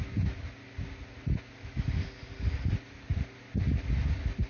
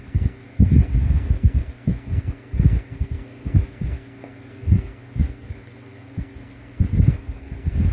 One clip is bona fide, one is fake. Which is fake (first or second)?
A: second